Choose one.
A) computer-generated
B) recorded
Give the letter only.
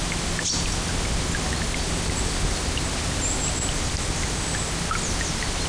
B